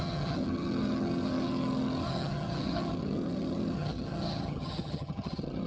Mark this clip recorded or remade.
remade